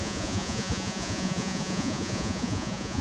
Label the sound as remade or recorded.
remade